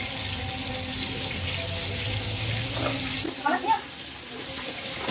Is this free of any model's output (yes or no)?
yes